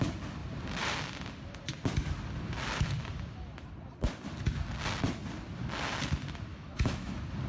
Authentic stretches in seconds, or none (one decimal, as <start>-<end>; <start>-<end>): 0.0-6.5; 7.1-7.5